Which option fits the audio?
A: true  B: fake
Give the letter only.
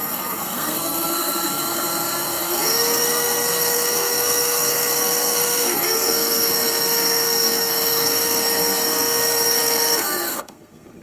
B